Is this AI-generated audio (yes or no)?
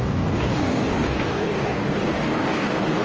yes